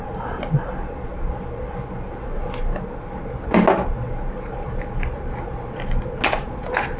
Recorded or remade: recorded